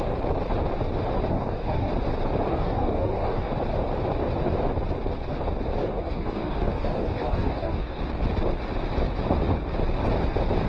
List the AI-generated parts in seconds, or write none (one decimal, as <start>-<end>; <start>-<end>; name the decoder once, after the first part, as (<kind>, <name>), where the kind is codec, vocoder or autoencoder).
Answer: 1.3-1.9 (codec, DAC); 2.5-3.5; 5.8-8.0